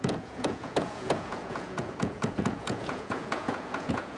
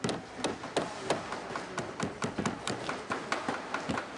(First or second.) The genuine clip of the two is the second